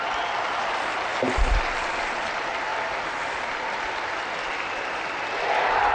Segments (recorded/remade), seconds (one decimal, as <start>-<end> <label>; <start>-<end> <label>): 0.0-5.9 recorded